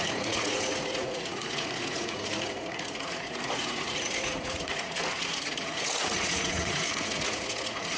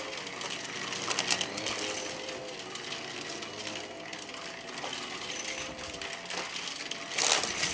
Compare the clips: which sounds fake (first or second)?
first